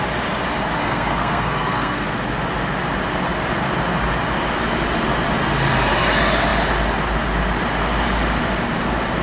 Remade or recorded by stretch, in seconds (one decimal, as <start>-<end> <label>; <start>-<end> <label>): 0.0-0.8 recorded; 0.8-2.1 remade; 2.1-9.2 recorded